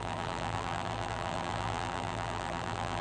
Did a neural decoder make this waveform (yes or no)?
yes